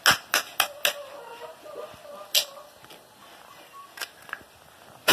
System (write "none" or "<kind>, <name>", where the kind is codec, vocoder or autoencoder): none